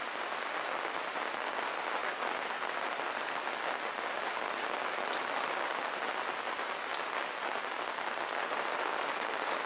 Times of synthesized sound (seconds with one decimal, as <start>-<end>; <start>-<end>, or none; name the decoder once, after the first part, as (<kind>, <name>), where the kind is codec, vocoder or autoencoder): none